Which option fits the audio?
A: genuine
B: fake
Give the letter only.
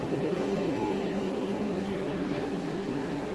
B